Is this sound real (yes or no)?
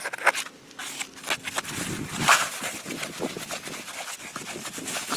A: yes